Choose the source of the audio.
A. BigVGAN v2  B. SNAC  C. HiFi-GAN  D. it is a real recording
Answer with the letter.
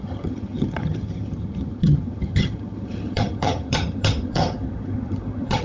C